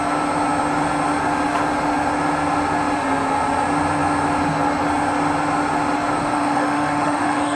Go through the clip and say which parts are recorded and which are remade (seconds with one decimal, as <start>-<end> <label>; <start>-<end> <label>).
0.0-6.2 recorded; 6.2-7.6 remade